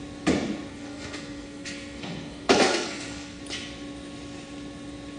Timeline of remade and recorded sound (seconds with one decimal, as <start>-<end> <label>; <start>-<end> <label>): 0.0-0.7 recorded; 0.7-3.4 remade; 3.4-5.2 recorded